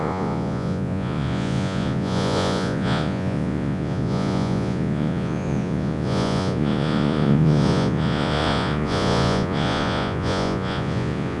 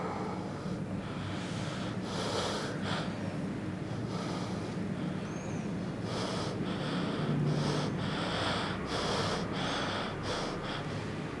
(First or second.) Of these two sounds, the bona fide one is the second